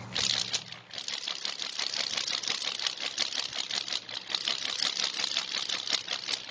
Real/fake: real